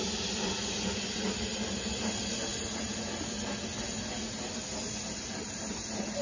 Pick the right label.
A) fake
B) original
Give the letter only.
B